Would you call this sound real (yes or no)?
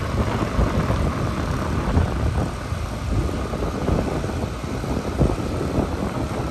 yes